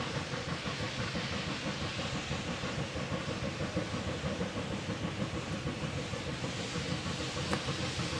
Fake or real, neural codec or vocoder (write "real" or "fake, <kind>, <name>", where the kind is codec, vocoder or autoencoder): real